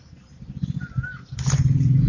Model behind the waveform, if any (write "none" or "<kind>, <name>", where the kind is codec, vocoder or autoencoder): none